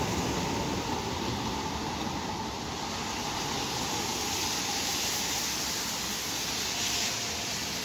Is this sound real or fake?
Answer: real